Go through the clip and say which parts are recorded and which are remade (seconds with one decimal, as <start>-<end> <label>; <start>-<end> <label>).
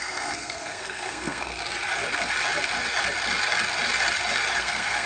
0.0-1.5 remade; 1.5-4.6 recorded; 4.6-5.1 remade